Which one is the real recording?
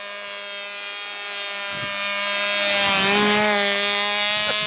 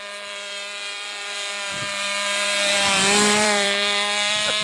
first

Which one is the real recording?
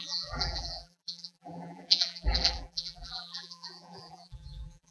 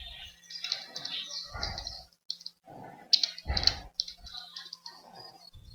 second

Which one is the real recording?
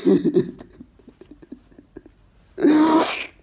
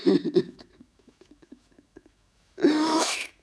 first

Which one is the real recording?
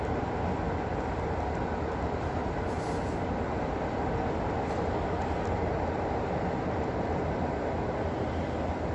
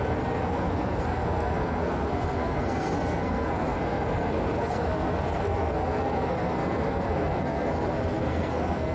first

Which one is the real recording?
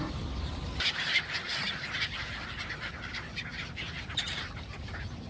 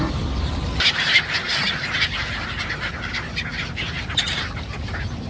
second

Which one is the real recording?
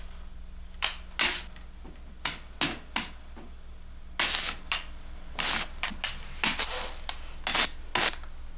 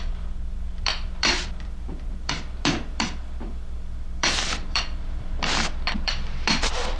first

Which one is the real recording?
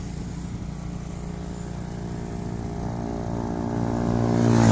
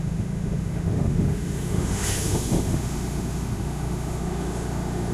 first